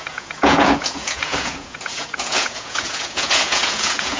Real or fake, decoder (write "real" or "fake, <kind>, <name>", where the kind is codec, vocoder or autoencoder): fake, vocoder, Vocos